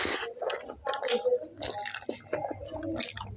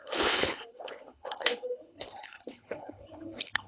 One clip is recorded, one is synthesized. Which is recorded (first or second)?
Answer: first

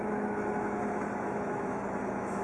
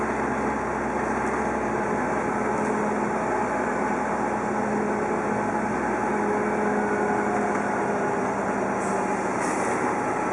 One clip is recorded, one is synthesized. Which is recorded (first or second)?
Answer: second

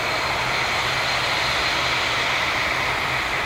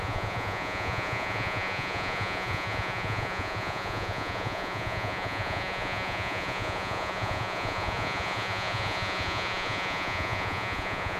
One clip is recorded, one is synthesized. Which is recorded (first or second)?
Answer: first